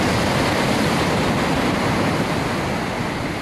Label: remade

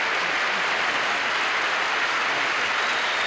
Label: recorded